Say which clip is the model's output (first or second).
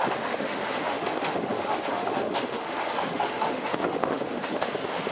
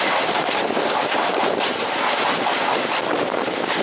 first